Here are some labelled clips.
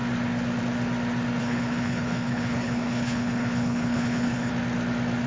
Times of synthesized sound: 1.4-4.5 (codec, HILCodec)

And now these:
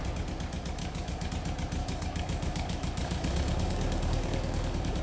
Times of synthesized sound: 0.8-1.3 (codec, DAC); 1.8-5.0

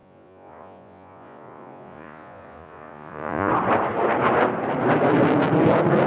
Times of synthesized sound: 0.0-3.5 (vocoder, Vocos)

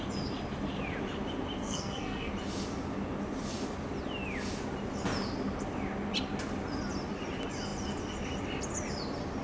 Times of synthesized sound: 1.6-2.3 (codec, SNAC)

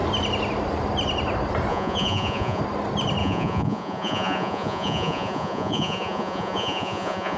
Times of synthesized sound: 1.7-2.6 (vocoder, Vocos); 3.2-7.4

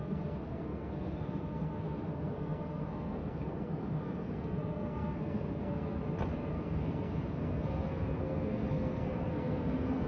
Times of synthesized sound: 0.0-6.0 (codec, SNAC); 6.5-10.1

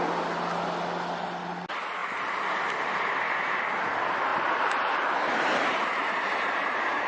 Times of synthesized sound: 2.0-3.6 (vocoder, BigVGAN v2); 4.3-7.1